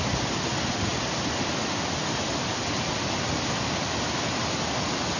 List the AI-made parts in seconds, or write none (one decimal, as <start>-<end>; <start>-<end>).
none